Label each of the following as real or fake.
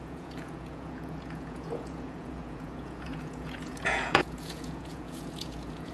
fake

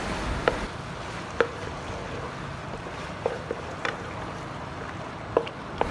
fake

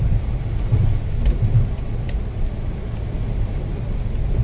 real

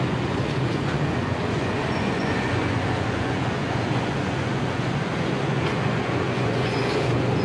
fake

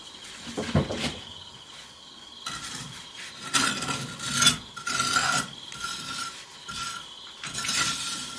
real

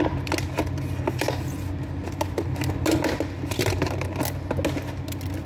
real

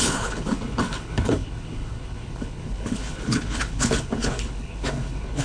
fake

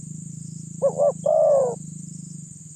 real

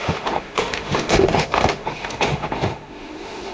fake